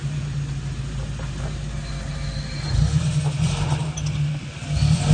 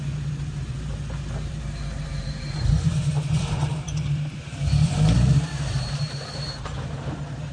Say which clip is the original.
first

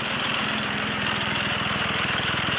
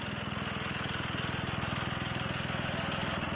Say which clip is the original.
second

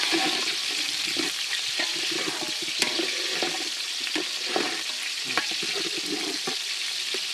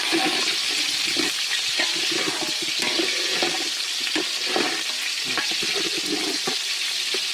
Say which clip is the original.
second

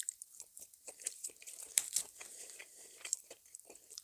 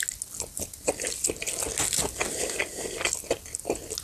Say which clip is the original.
second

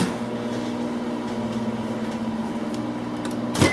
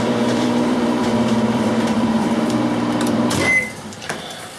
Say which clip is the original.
first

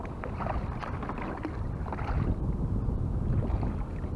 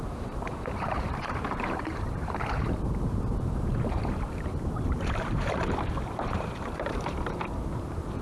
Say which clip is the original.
first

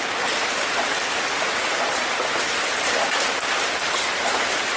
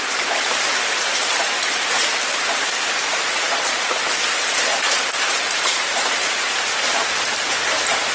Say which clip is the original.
first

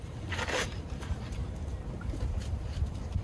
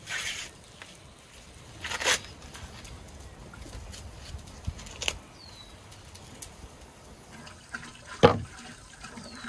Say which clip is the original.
second